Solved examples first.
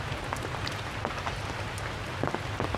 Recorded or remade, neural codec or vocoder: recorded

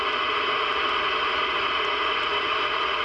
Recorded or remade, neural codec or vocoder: recorded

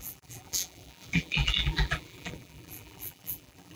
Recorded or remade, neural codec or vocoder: remade, vocoder, BigVGAN v2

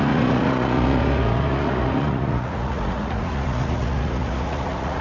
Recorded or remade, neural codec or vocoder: remade, vocoder, Vocos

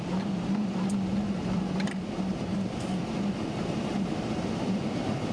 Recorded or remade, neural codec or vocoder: remade, vocoder, BigVGAN v2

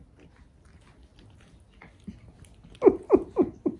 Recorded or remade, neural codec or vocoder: recorded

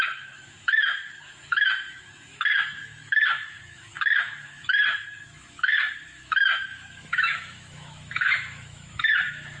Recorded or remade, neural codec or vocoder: remade, autoencoder, DAC-VAE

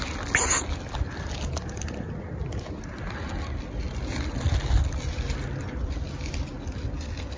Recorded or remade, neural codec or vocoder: recorded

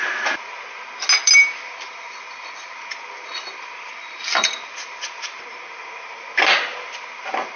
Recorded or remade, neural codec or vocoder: recorded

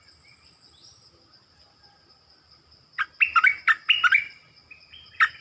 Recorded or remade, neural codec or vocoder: recorded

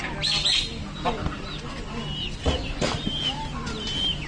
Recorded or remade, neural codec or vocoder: recorded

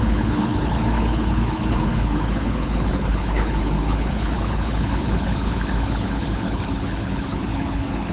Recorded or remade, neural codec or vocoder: remade, codec, HILCodec